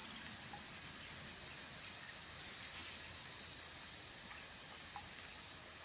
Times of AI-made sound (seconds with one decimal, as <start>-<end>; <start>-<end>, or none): none